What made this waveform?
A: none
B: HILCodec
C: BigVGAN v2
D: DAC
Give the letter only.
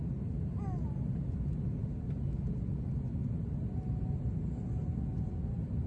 A